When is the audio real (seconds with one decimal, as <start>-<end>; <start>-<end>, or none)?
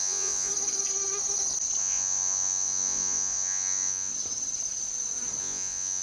0.5-1.8; 4.1-5.4